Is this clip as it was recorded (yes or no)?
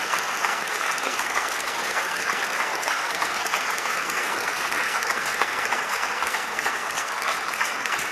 no